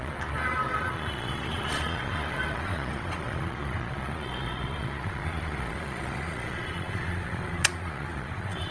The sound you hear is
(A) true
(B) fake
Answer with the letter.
B